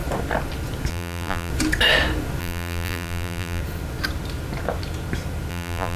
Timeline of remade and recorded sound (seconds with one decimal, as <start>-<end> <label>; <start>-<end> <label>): 0.0-0.9 recorded; 0.9-1.5 remade; 1.5-2.4 recorded; 2.4-3.6 remade; 3.6-5.5 recorded; 5.5-6.0 remade